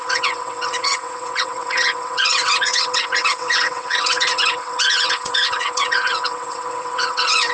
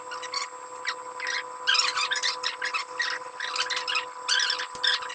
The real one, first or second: second